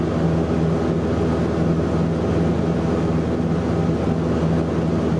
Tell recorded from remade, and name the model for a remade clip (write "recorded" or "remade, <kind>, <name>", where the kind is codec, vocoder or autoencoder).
recorded